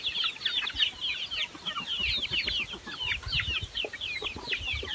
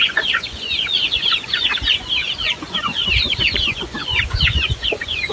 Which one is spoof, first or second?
second